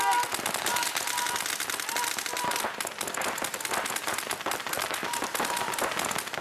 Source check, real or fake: real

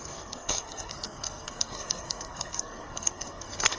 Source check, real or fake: fake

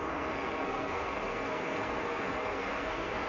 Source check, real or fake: fake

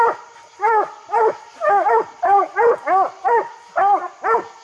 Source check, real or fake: real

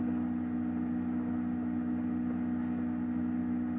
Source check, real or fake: real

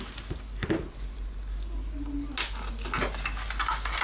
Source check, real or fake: real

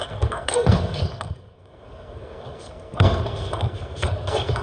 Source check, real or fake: fake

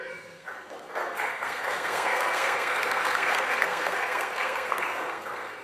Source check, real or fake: fake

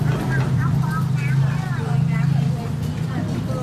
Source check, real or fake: real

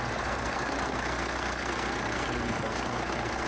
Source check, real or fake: fake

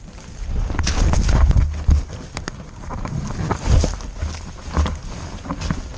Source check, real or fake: real